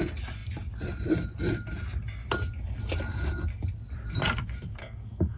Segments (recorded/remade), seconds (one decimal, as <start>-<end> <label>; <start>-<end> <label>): 0.0-4.8 recorded; 4.8-5.4 remade